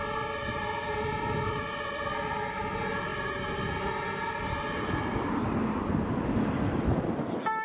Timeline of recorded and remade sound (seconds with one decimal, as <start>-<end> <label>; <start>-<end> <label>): 0.0-7.6 recorded

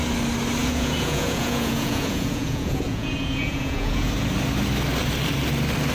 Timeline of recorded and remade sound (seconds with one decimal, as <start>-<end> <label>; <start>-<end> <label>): 0.0-0.6 recorded; 0.6-4.1 remade; 4.1-5.9 recorded

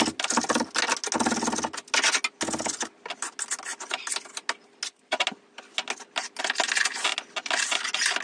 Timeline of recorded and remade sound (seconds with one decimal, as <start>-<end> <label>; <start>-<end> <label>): 0.0-8.2 recorded